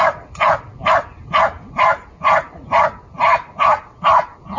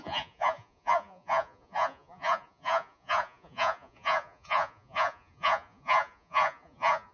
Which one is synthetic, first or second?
second